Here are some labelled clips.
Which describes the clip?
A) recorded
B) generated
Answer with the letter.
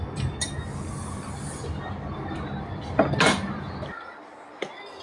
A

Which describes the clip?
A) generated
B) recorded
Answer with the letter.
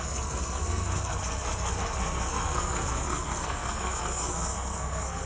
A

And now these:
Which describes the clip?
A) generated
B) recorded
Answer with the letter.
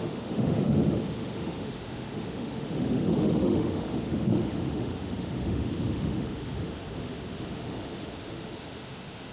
A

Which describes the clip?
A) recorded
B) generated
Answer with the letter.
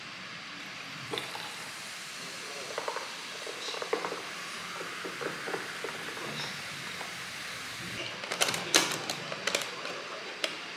B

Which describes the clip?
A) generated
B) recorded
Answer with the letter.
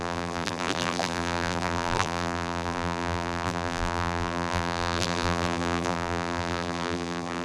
A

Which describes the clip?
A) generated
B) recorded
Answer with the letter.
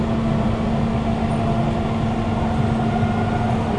B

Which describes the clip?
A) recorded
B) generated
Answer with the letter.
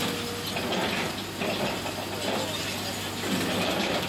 A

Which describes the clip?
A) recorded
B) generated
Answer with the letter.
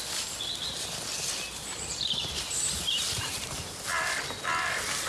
A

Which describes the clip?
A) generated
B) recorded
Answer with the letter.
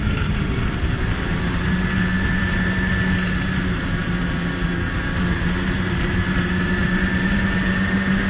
A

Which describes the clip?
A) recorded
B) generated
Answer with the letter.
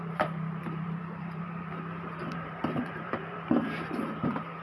B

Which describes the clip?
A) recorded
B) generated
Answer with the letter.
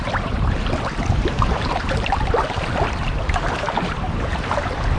B